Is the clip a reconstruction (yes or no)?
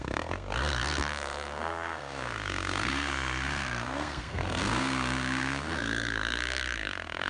yes